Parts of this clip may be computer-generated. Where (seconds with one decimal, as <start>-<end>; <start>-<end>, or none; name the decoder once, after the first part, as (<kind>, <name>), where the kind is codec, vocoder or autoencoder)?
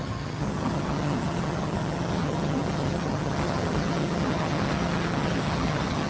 0.0-6.1 (vocoder, HiFi-GAN)